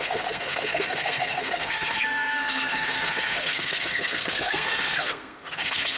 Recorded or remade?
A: remade